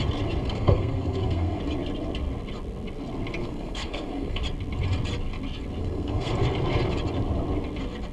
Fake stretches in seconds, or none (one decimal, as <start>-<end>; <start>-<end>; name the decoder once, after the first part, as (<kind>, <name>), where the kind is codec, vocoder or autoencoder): 0.4-1.6 (codec, SNAC); 3.4-4.4; 5.8-6.3